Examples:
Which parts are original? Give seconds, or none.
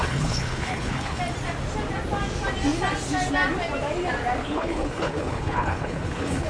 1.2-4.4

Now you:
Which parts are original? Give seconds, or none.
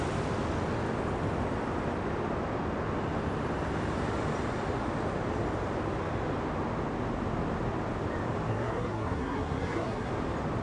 0.0-8.5; 10.1-10.6